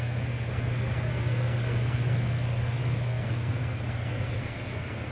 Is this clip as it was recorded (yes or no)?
no